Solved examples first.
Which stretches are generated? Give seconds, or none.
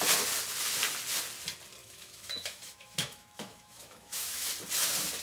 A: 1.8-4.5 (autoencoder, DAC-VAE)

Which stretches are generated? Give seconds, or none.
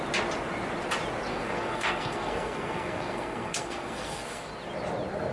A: 1.3-4.5 (codec, SNAC)